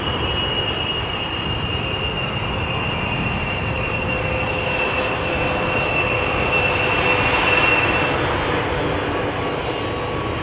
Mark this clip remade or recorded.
recorded